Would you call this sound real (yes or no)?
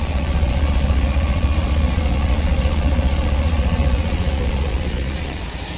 no